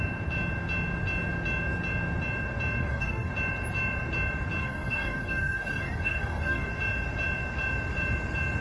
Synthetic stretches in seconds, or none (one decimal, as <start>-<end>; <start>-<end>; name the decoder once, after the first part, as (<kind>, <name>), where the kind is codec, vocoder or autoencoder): 2.8-3.3 (codec, DAC); 4.6-6.7